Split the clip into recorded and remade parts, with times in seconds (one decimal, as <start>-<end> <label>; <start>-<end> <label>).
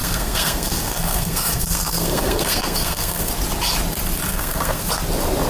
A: 0.0-3.3 remade; 3.3-4.3 recorded; 4.3-4.9 remade; 4.9-5.5 recorded